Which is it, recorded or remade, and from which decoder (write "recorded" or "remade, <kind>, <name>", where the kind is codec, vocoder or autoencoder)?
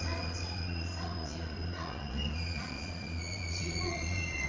remade, vocoder, Vocos